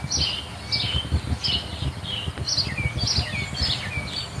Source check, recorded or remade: recorded